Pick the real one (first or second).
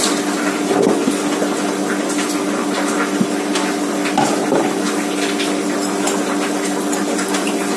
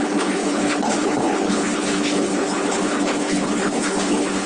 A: first